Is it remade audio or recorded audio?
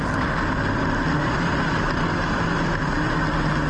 recorded